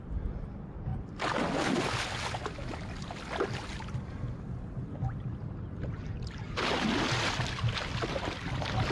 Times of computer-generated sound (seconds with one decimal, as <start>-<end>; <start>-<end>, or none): none